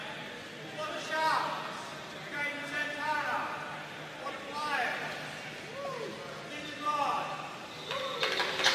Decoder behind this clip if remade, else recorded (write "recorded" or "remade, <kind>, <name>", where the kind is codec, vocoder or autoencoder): recorded